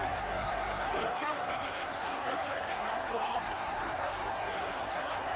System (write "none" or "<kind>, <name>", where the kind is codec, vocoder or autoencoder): codec, SNAC